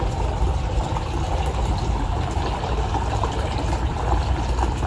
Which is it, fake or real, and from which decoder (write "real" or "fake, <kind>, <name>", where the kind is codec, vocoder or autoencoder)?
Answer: real